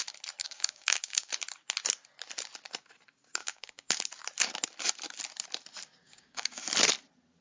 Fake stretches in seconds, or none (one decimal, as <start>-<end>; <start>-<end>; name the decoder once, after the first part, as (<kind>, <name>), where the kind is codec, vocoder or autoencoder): 0.4-1.3 (codec, DAC); 3.4-4.0; 6.0-6.6